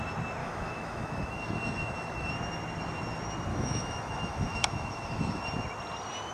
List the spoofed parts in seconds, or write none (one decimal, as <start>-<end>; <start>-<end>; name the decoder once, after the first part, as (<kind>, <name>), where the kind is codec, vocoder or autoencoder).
0.4-2.3 (autoencoder, DAC-VAE); 3.5-5.4